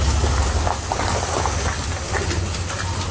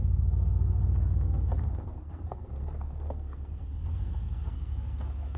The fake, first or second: second